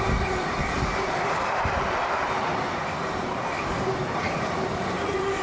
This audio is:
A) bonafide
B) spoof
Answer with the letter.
A